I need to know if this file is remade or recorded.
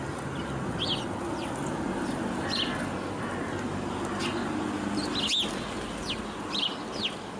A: recorded